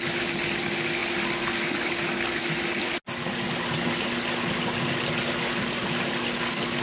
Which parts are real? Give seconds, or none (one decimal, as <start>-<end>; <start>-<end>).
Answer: 0.0-6.8